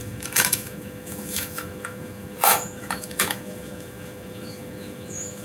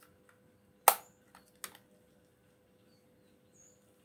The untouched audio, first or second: second